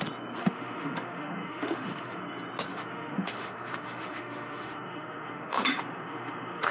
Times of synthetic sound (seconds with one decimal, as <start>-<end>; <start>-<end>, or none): 0.4-2.2; 2.7-6.7